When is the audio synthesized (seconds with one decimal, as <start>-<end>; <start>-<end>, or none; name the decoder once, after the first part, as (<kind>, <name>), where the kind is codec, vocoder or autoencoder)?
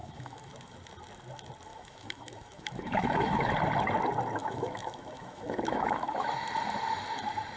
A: 0.0-0.5 (autoencoder, DAC-VAE); 1.7-3.5; 4.4-6.3